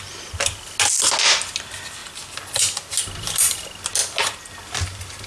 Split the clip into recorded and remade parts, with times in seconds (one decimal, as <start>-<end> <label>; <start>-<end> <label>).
0.0-5.3 recorded